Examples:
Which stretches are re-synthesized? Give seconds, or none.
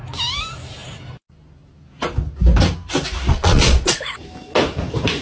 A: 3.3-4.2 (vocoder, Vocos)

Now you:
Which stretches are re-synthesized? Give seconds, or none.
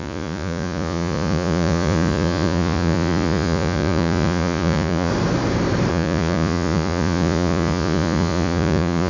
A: 0.0-5.1 (vocoder, Vocos); 5.9-9.1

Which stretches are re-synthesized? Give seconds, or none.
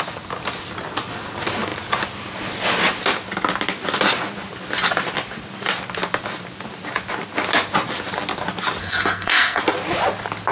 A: 8.8-9.6 (codec, SNAC)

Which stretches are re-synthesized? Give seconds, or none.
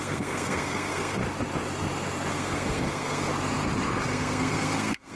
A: 0.0-1.2 (codec, SNAC); 2.3-3.3; 4.0-5.2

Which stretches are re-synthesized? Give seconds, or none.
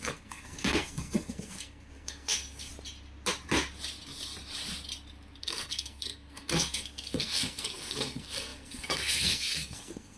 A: 0.0-2.7 (codec, SNAC); 5.4-10.2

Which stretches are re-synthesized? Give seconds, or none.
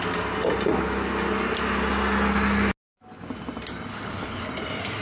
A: 3.9-4.5 (codec, HILCodec)